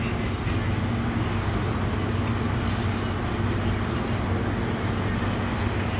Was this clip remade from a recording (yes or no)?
no